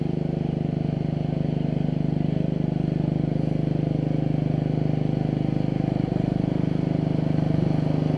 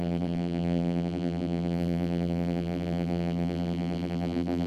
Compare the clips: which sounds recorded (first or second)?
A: first